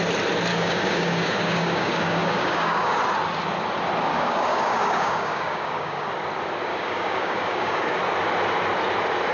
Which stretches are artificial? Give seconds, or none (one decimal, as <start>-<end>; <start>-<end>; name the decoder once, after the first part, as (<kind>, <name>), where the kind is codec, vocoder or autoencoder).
0.5-3.0 (codec, DAC); 4.1-6.1; 6.7-8.0